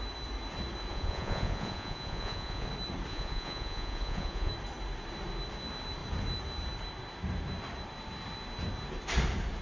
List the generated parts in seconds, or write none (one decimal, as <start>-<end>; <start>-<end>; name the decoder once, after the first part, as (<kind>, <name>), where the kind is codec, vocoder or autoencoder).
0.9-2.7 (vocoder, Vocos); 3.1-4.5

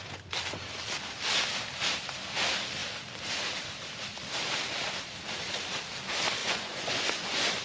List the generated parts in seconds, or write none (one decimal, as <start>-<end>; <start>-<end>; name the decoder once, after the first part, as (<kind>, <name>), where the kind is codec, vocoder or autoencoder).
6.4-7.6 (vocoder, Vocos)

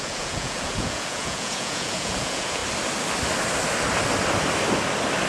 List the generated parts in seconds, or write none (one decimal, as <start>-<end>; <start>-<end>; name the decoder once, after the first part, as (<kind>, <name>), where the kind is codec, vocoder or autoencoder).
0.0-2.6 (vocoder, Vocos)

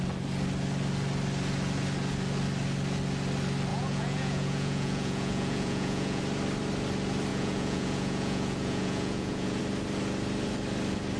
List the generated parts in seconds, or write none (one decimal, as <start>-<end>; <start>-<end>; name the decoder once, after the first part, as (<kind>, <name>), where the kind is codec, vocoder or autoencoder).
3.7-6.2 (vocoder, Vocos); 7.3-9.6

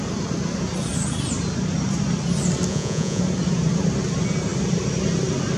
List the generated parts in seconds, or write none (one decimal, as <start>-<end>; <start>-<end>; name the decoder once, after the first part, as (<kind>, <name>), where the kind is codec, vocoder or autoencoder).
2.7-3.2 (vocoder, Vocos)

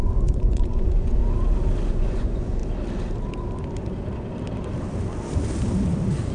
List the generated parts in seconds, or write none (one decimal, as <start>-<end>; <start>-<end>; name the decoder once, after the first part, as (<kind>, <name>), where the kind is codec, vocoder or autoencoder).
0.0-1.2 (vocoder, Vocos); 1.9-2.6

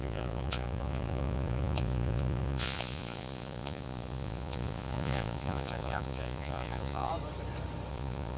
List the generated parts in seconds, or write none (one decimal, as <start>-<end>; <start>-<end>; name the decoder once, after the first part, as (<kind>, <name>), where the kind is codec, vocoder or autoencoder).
0.0-7.1 (vocoder, Vocos); 7.9-8.4

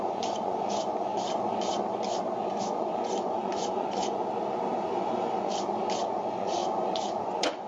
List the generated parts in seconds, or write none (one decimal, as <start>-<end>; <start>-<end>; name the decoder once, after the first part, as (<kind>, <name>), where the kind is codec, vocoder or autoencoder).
0.0-1.1 (vocoder, Vocos); 2.6-4.2; 6.0-7.7